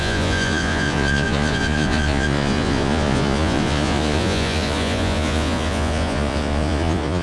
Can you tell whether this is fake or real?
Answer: fake